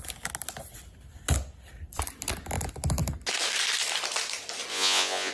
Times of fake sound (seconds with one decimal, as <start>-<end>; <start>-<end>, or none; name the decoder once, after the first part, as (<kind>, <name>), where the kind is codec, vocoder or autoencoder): 4.7-5.3 (vocoder, Vocos)